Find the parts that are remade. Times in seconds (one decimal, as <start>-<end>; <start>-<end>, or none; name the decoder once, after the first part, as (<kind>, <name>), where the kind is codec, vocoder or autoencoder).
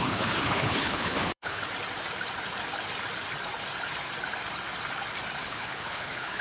0.0-1.6 (codec, HILCodec); 5.4-6.4